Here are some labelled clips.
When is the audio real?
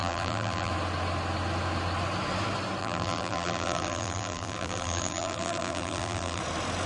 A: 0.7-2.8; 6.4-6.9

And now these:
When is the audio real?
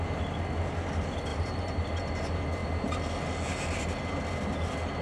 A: 0.0-1.3; 1.9-5.0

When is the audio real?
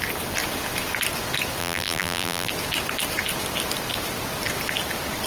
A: 0.0-1.6; 2.5-5.3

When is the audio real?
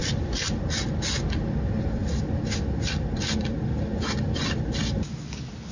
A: 1.0-2.0; 2.8-5.7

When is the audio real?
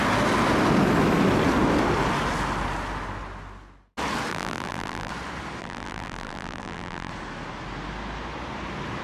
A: 0.0-4.3; 5.1-5.6; 7.1-9.0